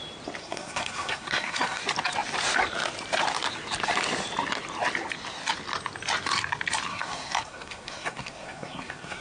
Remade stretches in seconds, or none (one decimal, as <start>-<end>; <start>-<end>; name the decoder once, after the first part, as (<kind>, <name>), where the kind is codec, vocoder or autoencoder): 0.4-1.8 (codec, SNAC); 6.9-9.2